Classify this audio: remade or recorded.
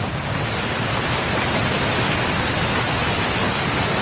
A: recorded